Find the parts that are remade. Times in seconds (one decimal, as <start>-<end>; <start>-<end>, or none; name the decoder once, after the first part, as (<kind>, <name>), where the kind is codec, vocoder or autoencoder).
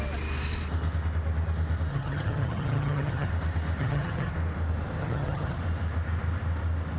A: 1.9-3.3 (vocoder, HiFi-GAN); 3.8-4.3; 5.0-5.6